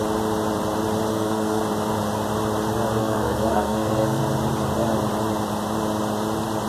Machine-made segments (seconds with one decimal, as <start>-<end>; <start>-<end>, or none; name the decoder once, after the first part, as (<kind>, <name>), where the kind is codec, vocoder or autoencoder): 1.1-1.6 (codec, SNAC); 3.0-4.2